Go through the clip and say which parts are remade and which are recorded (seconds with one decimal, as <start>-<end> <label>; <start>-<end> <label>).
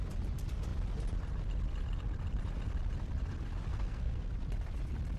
0.0-3.7 recorded; 3.7-4.3 remade; 4.3-5.2 recorded